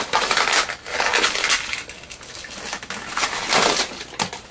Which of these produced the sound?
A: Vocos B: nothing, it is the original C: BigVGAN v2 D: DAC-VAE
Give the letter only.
B